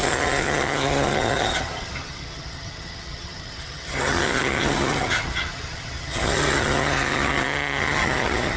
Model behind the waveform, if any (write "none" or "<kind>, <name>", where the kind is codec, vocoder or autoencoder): vocoder, HiFi-GAN